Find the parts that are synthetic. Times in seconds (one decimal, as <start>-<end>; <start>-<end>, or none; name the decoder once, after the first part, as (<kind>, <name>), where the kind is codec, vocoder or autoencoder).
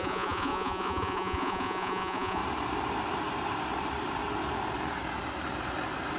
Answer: 0.0-2.4 (vocoder, Vocos)